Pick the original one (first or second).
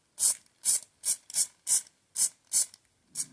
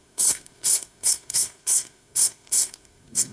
first